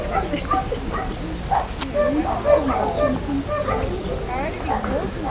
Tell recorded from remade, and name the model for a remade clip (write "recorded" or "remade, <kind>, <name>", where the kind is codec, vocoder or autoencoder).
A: recorded